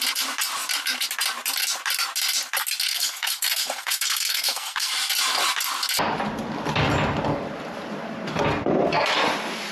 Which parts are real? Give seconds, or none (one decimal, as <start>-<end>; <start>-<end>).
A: 0.0-2.9; 4.9-9.7